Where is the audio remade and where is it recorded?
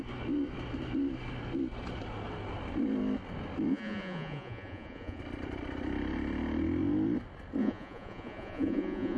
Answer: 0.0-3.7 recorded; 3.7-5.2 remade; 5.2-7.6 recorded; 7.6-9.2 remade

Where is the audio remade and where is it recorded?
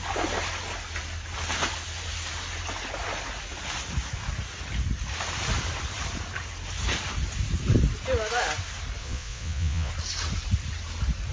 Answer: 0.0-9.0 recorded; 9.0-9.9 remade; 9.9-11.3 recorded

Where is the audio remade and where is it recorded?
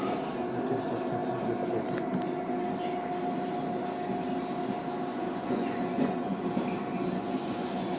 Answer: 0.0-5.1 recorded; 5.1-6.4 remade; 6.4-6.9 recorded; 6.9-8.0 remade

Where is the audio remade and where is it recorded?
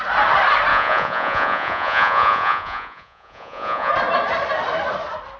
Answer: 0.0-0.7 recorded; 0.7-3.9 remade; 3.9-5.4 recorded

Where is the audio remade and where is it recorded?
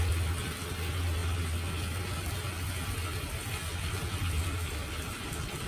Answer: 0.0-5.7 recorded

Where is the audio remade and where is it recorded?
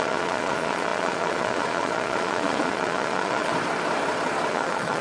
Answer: 0.0-3.5 remade; 3.5-4.5 recorded; 4.5-5.0 remade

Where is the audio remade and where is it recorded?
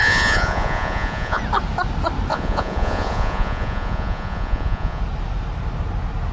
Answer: 0.0-1.4 remade; 1.4-2.3 recorded; 2.3-5.0 remade; 5.0-6.3 recorded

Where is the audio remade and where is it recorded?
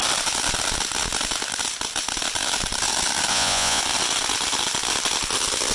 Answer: 0.0-3.3 recorded; 3.3-3.8 remade; 3.8-5.7 recorded